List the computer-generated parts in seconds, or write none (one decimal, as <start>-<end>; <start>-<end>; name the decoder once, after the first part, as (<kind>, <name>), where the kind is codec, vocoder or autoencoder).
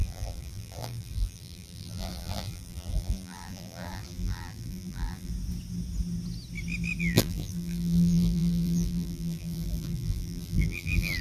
0.0-5.3 (vocoder, BigVGAN v2); 7.0-11.2